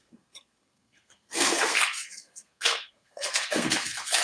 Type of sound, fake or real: fake